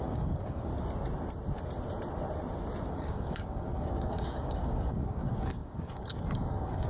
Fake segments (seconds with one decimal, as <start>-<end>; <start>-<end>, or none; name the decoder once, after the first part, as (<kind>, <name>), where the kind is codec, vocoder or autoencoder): 0.0-0.7 (codec, DAC); 2.9-6.9